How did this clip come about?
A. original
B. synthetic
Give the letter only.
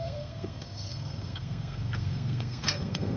B